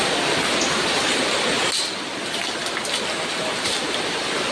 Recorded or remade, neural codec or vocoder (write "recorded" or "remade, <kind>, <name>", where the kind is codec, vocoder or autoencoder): recorded